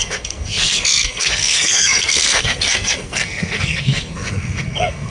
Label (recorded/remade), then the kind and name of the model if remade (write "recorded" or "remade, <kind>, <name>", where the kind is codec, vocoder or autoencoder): remade, codec, SNAC